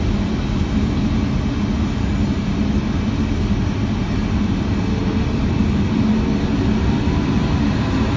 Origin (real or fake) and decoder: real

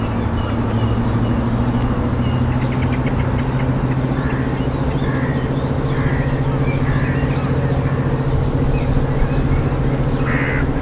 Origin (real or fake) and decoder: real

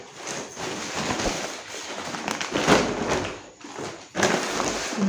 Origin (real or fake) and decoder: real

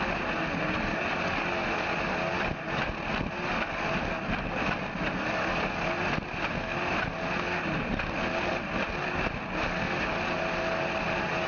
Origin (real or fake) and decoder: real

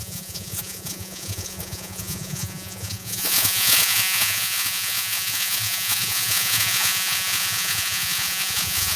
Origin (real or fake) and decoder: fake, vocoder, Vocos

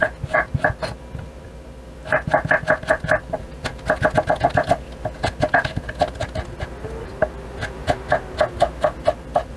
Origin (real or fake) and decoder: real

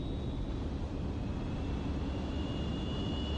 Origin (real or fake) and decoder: real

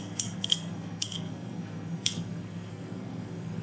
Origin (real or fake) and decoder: fake, codec, SNAC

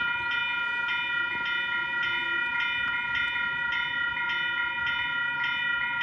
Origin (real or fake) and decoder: real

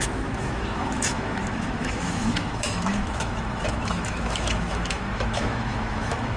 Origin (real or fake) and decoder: fake, autoencoder, DAC-VAE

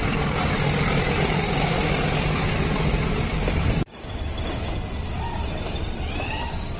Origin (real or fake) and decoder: real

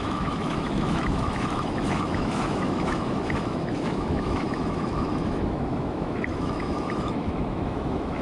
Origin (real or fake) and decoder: fake, autoencoder, DAC-VAE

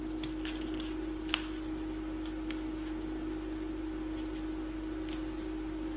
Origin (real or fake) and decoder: real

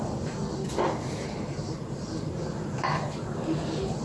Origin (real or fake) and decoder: fake, vocoder, BigVGAN v2